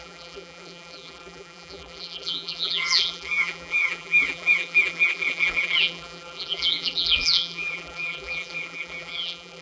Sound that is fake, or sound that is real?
fake